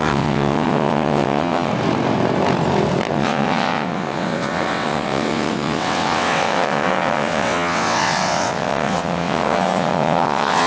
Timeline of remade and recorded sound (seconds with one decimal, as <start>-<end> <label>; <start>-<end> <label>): 0.0-1.7 remade; 1.7-3.1 recorded; 3.1-10.7 remade